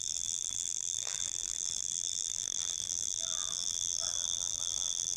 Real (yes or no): no